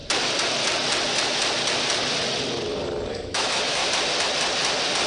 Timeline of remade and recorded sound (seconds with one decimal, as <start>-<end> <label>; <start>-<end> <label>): 0.0-3.1 recorded; 3.1-3.8 remade; 3.8-5.1 recorded